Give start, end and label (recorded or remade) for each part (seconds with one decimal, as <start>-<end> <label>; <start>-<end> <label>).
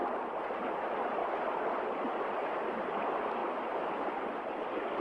0.0-5.0 recorded